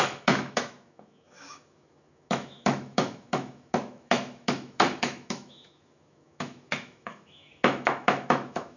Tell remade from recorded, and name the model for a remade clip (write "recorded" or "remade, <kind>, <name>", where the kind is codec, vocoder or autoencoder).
remade, autoencoder, DAC-VAE